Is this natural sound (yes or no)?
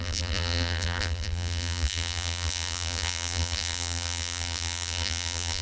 no